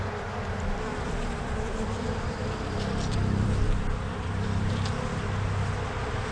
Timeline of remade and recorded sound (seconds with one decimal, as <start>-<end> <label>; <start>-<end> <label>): 0.0-0.9 recorded; 0.9-4.7 remade; 4.7-6.3 recorded